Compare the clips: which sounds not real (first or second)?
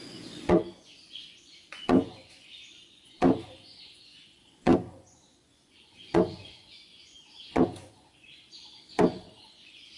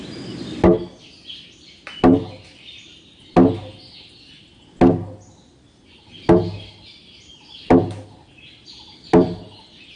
first